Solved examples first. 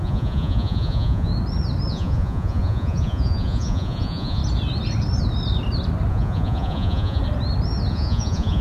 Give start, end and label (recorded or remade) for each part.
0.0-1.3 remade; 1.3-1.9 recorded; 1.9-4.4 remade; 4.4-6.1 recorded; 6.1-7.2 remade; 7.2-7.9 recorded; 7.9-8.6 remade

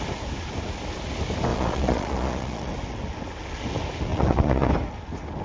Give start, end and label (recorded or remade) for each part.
0.0-1.5 recorded; 1.5-2.7 remade; 2.7-4.1 recorded; 4.1-4.7 remade; 4.7-5.4 recorded

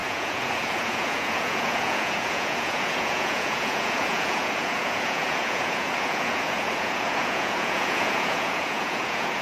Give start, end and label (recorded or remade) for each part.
0.0-9.4 remade

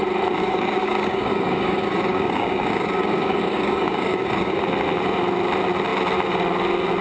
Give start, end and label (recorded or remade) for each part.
0.0-0.4 recorded; 0.4-4.6 remade; 4.6-7.0 recorded

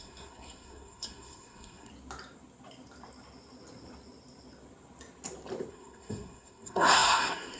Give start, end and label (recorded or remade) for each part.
0.0-1.9 remade; 1.9-5.7 recorded; 5.7-7.6 remade

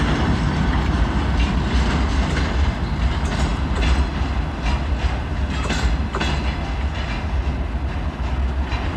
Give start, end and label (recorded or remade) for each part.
0.0-3.5 remade; 3.5-8.2 recorded; 8.2-9.0 remade

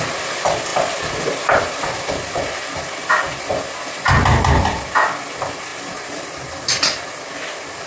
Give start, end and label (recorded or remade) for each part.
0.0-7.9 recorded

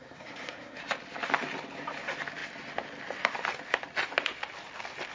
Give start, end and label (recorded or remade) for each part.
0.0-0.8 remade; 0.8-5.1 recorded